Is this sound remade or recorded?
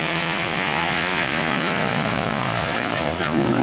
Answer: remade